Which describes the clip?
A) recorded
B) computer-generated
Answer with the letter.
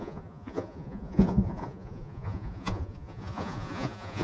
B